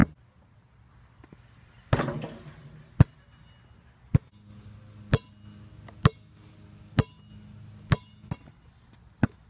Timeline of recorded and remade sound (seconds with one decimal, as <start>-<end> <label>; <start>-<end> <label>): 0.0-9.5 recorded